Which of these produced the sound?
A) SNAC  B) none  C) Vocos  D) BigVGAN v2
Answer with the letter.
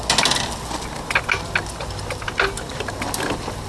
B